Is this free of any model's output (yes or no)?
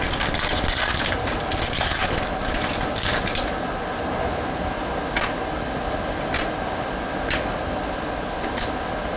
yes